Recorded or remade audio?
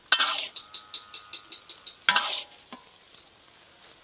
recorded